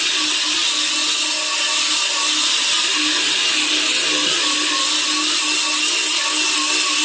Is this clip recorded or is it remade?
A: recorded